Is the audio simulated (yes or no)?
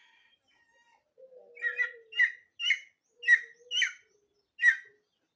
no